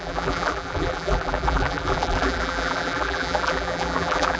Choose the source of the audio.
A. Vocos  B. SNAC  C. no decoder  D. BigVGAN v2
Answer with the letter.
D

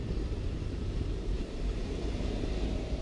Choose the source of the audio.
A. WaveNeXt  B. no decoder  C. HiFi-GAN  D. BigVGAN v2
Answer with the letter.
D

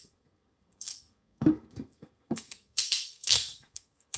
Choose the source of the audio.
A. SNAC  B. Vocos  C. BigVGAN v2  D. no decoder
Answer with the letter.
A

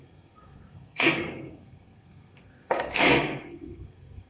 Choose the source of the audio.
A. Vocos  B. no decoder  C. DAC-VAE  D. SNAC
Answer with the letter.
D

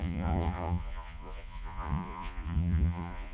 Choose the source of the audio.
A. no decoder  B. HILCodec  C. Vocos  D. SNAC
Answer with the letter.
C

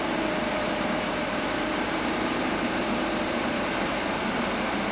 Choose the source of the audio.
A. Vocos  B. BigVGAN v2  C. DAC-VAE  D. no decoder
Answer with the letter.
B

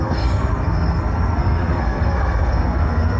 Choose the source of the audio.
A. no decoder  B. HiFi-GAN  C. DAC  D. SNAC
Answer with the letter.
D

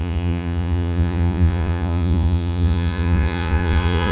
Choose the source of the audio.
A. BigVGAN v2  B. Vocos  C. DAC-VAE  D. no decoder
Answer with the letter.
B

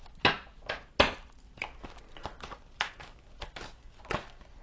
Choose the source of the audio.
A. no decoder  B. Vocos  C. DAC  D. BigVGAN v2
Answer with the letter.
A